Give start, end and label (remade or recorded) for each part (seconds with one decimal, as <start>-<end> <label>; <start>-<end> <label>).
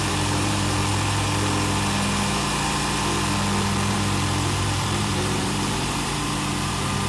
0.0-0.8 remade; 0.8-3.9 recorded; 3.9-7.1 remade